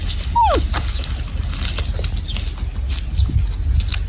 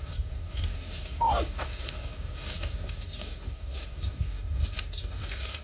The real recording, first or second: first